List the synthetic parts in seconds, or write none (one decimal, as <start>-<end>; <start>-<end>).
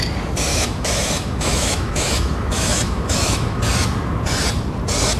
0.5-3.6